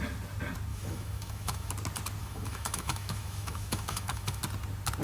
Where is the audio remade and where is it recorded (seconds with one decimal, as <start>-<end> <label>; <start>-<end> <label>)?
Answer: 0.0-0.7 recorded; 0.7-1.7 remade; 1.7-2.2 recorded; 2.2-4.4 remade; 4.4-5.0 recorded